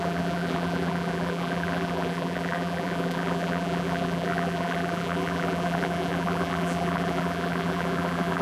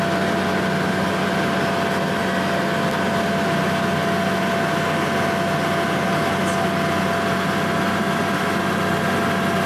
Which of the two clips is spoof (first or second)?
first